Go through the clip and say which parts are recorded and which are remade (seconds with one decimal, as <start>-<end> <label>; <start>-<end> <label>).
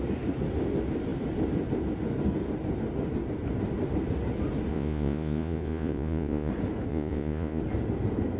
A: 0.0-4.7 recorded; 4.7-6.5 remade; 6.5-6.9 recorded; 6.9-7.6 remade; 7.6-8.4 recorded